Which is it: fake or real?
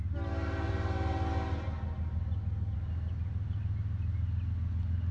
real